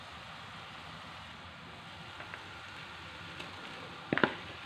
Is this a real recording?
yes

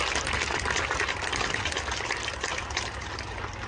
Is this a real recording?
yes